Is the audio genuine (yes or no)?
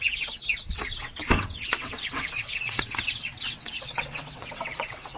no